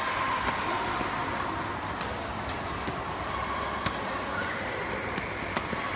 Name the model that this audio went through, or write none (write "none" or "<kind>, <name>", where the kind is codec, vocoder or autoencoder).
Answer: none